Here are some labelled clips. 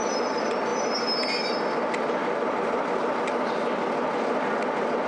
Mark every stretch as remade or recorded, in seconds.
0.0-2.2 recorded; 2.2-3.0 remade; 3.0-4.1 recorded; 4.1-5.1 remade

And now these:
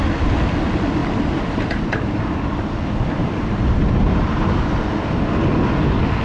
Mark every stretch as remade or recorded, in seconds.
0.0-1.0 recorded; 1.0-2.7 remade; 2.7-3.2 recorded; 3.2-4.7 remade; 4.7-6.2 recorded